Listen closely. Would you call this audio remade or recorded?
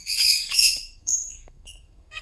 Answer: remade